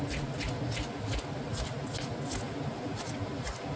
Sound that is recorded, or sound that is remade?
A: recorded